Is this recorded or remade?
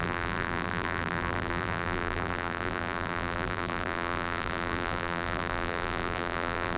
remade